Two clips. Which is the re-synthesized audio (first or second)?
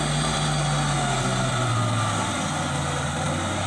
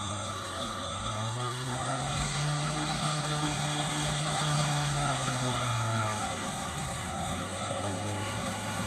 second